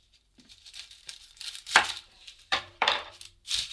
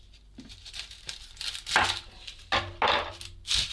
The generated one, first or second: first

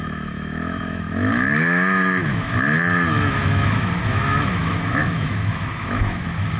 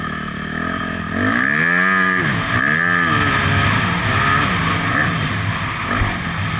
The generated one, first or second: first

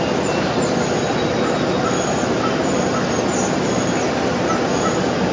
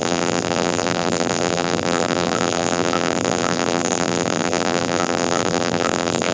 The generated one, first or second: second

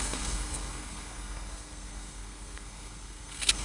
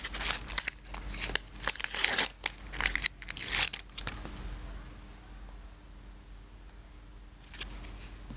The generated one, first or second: first